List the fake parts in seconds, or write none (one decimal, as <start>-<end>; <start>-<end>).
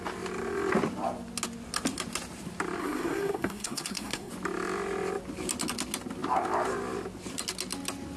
2.8-4.3